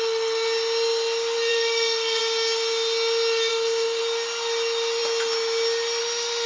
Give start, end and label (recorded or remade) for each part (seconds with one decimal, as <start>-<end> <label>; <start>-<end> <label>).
0.0-1.5 recorded; 1.5-2.2 remade; 2.2-3.5 recorded; 3.5-4.0 remade; 4.0-6.5 recorded